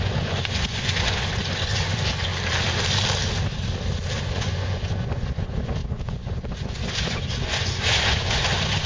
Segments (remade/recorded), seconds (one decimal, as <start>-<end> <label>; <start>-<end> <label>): 0.0-2.3 remade; 2.3-4.2 recorded; 4.2-8.9 remade